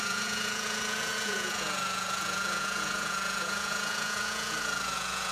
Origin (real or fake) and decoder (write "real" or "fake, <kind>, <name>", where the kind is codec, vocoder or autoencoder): fake, vocoder, Vocos